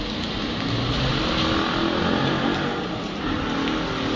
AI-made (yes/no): no